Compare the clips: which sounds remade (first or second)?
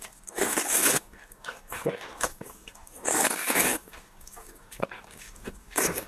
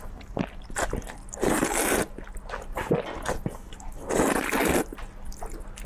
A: first